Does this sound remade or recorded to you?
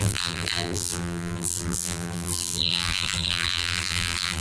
remade